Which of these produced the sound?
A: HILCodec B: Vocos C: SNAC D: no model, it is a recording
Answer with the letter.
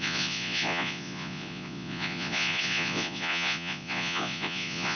B